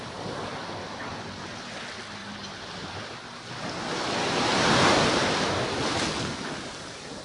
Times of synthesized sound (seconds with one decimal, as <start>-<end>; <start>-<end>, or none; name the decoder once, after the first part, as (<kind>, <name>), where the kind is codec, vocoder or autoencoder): 2.2-3.1 (vocoder, BigVGAN v2); 4.5-5.0